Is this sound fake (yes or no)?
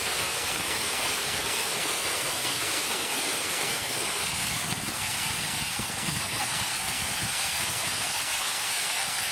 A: yes